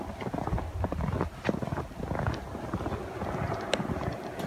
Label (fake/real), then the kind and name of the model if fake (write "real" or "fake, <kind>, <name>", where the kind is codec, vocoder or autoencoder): real